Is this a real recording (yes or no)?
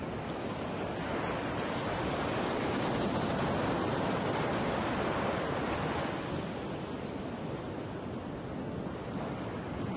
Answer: yes